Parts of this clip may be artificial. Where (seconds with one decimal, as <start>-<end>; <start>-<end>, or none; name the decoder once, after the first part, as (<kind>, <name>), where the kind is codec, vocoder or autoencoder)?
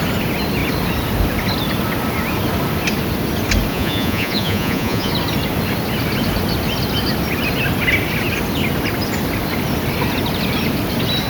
3.7-5.1 (vocoder, Vocos)